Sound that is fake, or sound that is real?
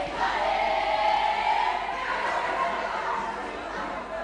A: real